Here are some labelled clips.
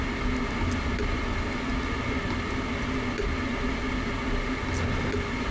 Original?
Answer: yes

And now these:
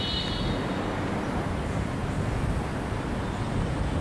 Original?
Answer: yes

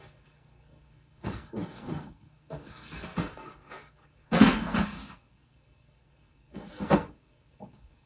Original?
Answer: no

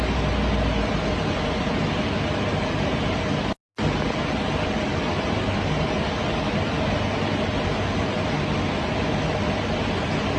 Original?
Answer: yes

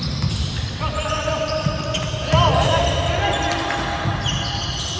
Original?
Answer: yes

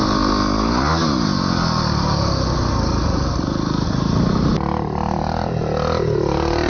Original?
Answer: yes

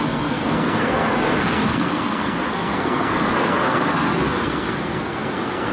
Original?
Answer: no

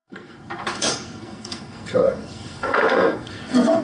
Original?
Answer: no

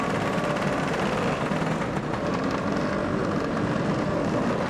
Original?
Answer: yes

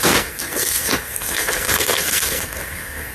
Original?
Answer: no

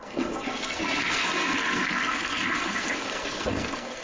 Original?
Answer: no